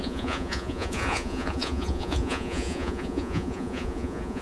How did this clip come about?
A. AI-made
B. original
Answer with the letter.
A